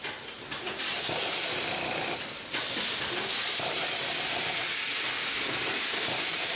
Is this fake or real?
fake